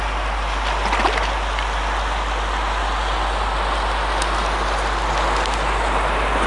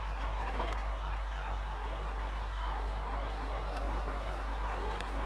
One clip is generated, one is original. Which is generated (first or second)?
second